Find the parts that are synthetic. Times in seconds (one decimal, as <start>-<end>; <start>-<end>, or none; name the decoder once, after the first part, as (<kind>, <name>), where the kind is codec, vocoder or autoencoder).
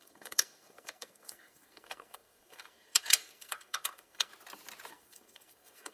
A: 0.0-4.3 (codec, SNAC); 4.9-5.9